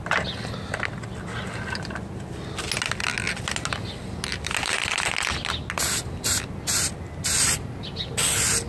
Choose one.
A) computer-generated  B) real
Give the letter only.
B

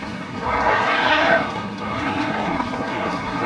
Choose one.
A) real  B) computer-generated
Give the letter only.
B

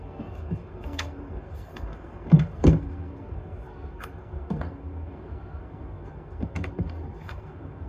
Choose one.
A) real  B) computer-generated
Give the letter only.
B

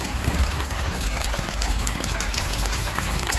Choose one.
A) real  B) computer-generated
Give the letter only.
B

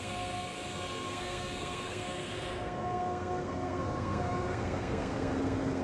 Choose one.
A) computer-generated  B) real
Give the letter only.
A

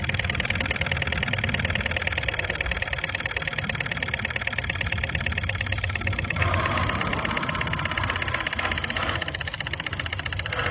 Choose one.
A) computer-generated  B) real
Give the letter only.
B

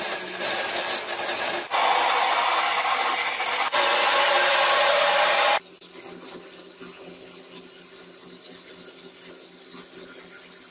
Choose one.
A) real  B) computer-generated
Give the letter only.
A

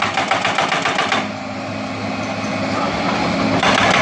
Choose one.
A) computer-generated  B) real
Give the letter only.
B